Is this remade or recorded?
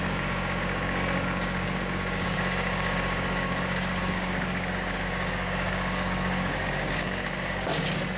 remade